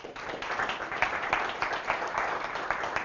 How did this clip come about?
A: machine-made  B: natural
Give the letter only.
B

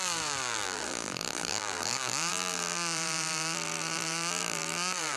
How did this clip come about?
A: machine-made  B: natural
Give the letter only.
A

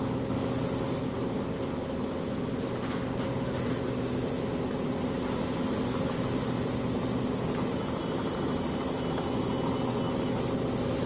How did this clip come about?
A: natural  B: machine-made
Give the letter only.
A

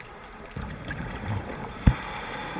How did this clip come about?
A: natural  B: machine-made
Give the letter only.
B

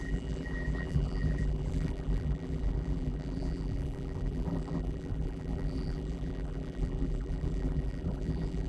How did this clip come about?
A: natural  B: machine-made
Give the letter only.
B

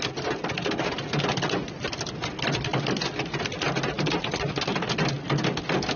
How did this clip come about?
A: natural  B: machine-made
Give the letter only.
A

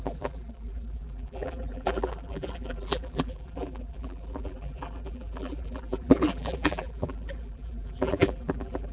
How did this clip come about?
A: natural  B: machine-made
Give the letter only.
B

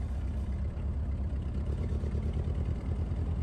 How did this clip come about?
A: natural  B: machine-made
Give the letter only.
B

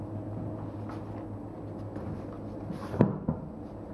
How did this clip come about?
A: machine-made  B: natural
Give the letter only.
B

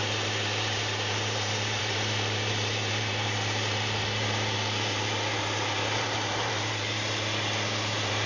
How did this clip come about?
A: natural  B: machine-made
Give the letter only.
B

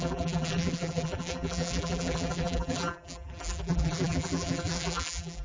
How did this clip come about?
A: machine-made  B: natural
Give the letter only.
A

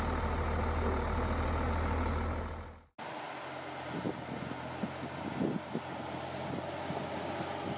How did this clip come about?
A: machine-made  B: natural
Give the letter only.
B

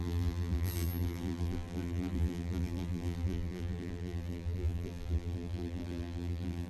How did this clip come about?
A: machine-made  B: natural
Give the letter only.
A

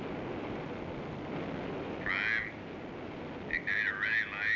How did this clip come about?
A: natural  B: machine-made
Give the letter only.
A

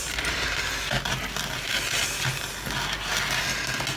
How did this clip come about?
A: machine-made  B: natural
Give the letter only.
B